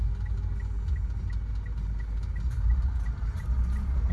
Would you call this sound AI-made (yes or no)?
no